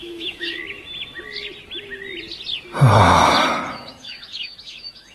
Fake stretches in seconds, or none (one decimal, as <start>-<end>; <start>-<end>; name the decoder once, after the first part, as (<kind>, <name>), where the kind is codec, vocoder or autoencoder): 0.0-0.6 (autoencoder, DAC-VAE); 3.7-5.1